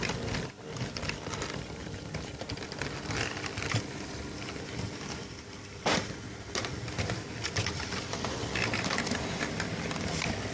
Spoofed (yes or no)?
yes